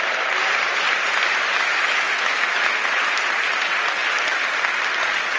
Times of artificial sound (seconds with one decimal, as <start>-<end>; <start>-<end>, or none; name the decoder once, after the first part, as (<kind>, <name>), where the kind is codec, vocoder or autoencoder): 1.5-2.6 (autoencoder, DAC-VAE)